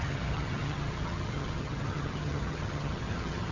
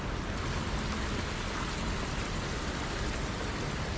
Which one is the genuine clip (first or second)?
second